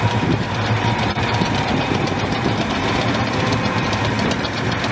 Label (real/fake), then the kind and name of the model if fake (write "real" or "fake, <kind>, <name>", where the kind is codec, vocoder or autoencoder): fake, vocoder, BigVGAN v2